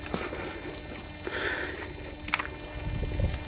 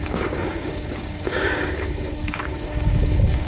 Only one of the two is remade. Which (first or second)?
second